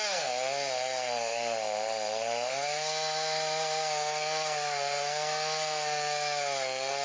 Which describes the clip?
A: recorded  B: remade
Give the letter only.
B